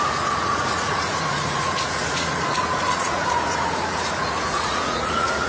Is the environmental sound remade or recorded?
remade